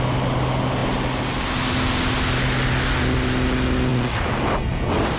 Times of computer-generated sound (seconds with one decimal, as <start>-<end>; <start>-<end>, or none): none